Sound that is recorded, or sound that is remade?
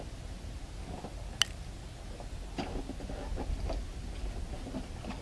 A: recorded